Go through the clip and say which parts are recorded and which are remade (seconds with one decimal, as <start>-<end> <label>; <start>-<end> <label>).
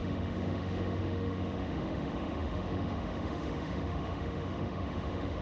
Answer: 0.0-5.4 remade